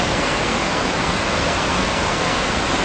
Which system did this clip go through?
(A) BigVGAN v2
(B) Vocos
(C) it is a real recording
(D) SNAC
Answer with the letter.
D